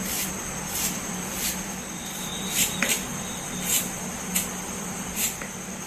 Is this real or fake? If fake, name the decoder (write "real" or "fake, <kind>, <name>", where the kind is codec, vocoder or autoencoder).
fake, vocoder, BigVGAN v2